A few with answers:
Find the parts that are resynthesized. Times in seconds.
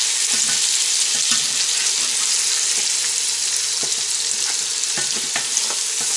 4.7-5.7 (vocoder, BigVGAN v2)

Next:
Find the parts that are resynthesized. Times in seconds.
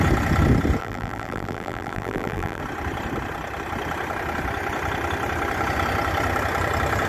0.8-2.6 (vocoder, BigVGAN v2)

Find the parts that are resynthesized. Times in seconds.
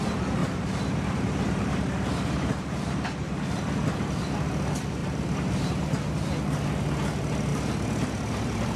0.4-3.6 (vocoder, BigVGAN v2); 5.0-5.9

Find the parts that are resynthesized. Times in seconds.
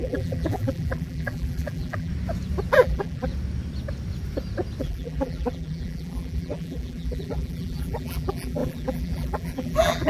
0.0-2.1 (vocoder, BigVGAN v2); 2.7-3.3; 4.8-10.1